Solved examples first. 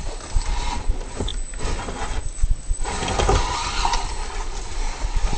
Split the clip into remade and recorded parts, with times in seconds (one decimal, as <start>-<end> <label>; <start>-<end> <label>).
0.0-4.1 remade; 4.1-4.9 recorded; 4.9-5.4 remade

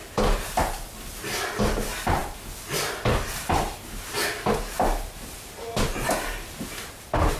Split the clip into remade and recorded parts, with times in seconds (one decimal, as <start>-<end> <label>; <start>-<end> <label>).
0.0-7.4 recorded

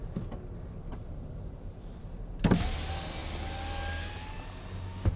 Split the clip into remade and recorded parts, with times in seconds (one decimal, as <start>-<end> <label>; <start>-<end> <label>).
0.0-0.9 recorded; 0.9-2.0 remade; 2.0-5.2 recorded

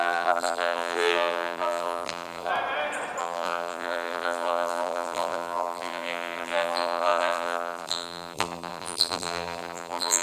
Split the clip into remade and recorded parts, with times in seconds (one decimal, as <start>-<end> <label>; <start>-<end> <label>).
0.0-2.5 remade; 2.5-3.2 recorded; 3.2-10.2 remade

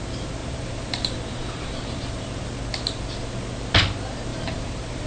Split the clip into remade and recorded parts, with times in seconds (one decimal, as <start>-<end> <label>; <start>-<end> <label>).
0.0-0.4 recorded; 0.4-2.5 remade; 2.5-4.3 recorded; 4.3-5.1 remade

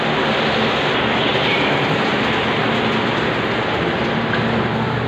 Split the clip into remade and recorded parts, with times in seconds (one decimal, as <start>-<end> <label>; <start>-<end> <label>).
0.0-1.3 recorded; 1.3-2.7 remade; 2.7-5.1 recorded